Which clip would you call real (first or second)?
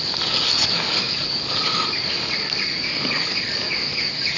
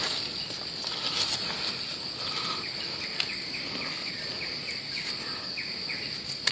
second